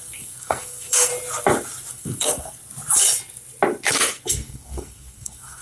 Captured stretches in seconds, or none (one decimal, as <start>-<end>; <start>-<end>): 1.1-1.9; 2.6-3.9